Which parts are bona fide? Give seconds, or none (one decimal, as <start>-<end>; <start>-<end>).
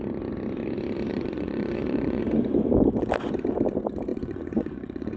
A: 0.0-1.1; 2.2-4.1